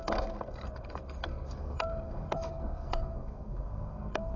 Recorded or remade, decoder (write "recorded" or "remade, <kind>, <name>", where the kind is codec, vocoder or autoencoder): remade, codec, SNAC